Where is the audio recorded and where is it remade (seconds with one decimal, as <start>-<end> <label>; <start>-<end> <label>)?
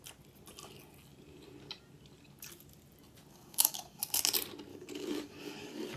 0.0-3.3 recorded; 3.3-4.0 remade; 4.0-4.7 recorded; 4.7-6.0 remade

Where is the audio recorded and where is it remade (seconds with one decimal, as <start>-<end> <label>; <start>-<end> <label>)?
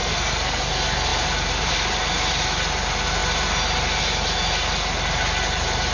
0.0-0.6 remade; 0.6-5.9 recorded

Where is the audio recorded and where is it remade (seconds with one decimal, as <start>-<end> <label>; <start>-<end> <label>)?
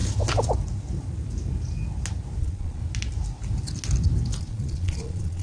0.0-2.4 recorded; 2.4-2.8 remade; 2.8-4.4 recorded; 4.4-5.4 remade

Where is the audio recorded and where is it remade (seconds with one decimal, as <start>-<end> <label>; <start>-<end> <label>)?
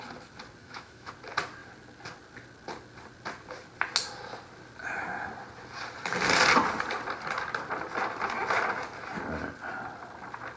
0.0-0.6 recorded; 0.6-1.1 remade; 1.1-10.6 recorded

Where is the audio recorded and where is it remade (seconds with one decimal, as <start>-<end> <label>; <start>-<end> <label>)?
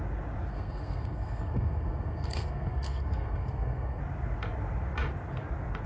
0.0-0.5 recorded; 0.5-4.0 remade; 4.0-5.9 recorded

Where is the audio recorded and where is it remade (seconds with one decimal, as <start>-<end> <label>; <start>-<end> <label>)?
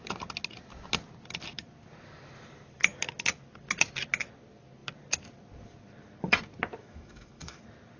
0.0-6.8 recorded; 6.8-7.6 remade; 7.6-8.0 recorded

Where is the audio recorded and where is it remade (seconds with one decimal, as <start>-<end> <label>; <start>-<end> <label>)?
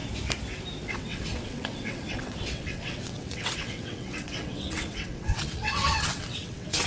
0.0-0.9 recorded; 0.9-6.9 remade